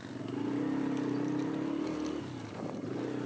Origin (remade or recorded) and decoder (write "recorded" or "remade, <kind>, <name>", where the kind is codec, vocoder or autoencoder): recorded